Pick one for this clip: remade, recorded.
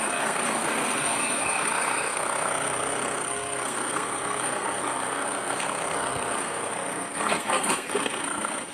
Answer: remade